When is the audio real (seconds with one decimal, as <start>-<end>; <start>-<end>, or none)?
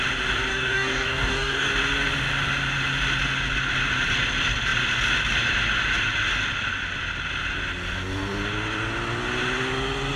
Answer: 0.0-0.5; 1.7-10.2